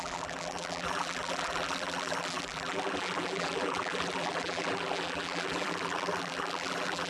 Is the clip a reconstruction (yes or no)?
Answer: yes